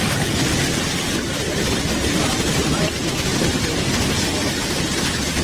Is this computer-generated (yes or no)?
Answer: no